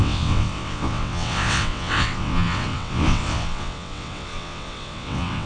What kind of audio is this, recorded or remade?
remade